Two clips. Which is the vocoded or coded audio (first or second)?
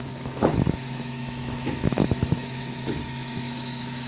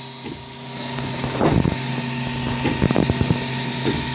first